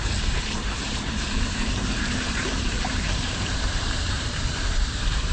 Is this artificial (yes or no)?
yes